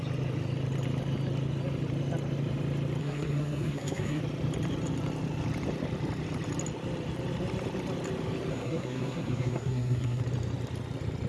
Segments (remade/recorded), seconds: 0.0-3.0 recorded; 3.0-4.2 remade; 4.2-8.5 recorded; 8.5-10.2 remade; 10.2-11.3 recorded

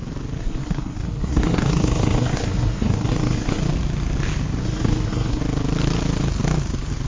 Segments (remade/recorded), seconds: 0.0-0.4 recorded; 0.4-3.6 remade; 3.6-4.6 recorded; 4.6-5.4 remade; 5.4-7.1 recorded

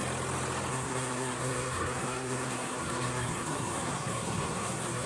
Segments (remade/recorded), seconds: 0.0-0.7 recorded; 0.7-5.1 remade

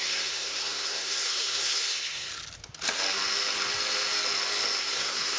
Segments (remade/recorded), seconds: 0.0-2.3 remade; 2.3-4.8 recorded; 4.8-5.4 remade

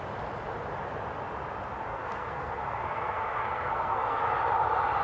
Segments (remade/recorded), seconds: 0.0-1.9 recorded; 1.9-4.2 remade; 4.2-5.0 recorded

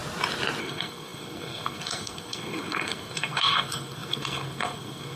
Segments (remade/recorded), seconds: 0.0-0.6 recorded; 0.6-5.2 remade